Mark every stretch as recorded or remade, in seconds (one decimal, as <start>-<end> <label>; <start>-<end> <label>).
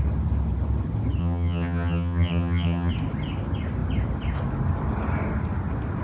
0.0-1.2 recorded; 1.2-2.9 remade; 2.9-6.0 recorded